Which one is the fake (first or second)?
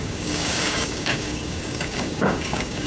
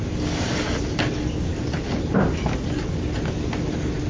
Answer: first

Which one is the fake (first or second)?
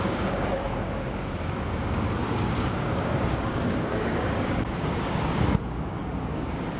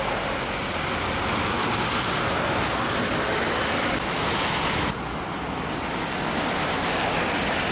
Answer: first